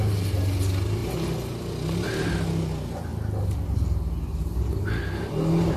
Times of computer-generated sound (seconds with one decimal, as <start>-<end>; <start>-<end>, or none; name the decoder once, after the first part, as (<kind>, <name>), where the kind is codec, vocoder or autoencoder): none